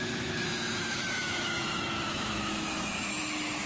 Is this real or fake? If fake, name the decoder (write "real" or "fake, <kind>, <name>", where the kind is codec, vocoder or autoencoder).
fake, autoencoder, DAC-VAE